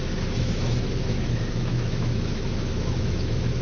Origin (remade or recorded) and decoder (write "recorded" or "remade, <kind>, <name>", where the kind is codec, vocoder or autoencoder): remade, autoencoder, DAC-VAE